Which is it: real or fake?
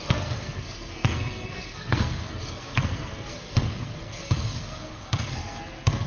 fake